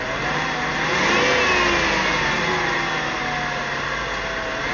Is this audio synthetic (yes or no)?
no